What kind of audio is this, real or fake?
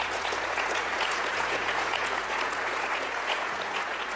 fake